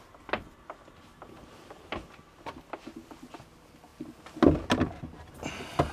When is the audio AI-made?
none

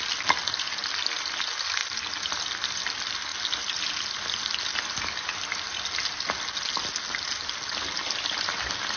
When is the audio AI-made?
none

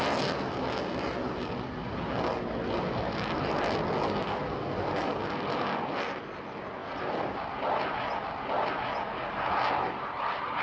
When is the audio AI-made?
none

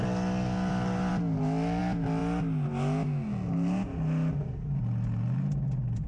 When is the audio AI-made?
none

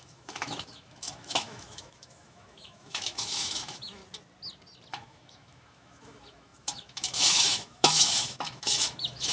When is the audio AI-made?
0.0-4.0 (autoencoder, DAC-VAE); 4.9-9.3

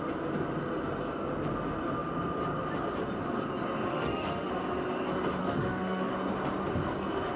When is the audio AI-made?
3.9-4.5 (autoencoder, DAC-VAE); 5.4-6.1